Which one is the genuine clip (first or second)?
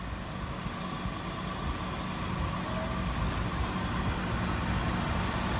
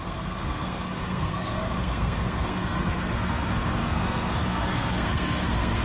first